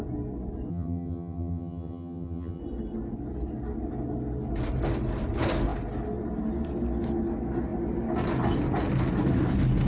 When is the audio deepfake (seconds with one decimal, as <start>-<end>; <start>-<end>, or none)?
0.7-2.6

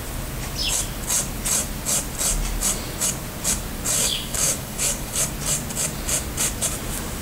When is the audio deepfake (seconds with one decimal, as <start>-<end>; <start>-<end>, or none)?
4.0-5.3

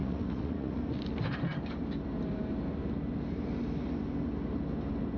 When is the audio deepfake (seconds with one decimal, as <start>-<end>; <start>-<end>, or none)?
0.0-0.8

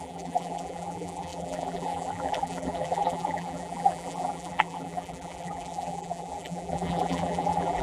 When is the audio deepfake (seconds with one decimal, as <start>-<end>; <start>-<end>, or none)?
0.0-7.8

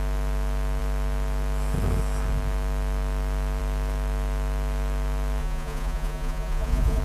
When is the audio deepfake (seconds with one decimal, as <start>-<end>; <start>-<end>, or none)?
5.4-7.0

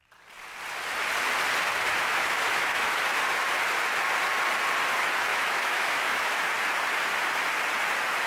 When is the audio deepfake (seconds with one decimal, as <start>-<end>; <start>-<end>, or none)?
1.9-3.0; 5.3-6.4

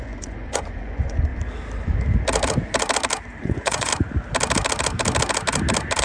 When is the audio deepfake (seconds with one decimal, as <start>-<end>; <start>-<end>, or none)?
0.0-1.3; 3.4-3.9

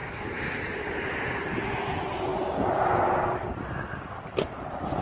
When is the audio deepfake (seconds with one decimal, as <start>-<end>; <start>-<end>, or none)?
none